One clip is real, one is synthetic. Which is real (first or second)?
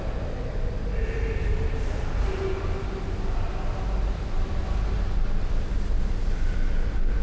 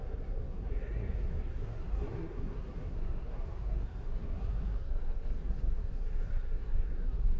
first